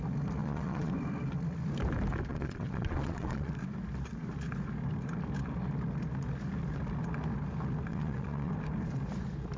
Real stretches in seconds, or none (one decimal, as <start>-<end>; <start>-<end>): 0.0-0.4; 0.9-2.3; 3.5-7.9; 8.5-9.6